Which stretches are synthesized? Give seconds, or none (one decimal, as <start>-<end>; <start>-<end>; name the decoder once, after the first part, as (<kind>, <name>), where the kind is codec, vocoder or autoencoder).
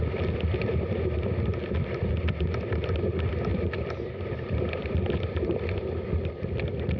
3.5-4.0 (vocoder, BigVGAN v2); 4.8-6.3